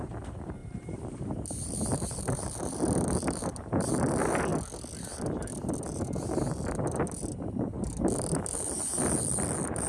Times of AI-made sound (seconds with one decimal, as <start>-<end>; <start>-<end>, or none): 0.0-4.5; 5.0-9.9